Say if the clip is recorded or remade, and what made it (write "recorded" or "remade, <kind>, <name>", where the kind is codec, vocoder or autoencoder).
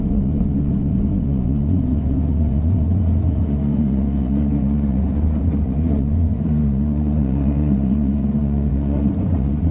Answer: remade, vocoder, Vocos